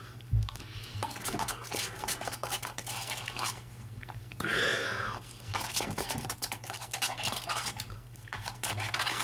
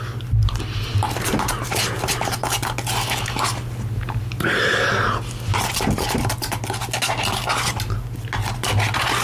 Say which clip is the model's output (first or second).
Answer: first